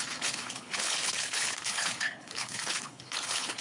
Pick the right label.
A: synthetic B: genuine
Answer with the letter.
A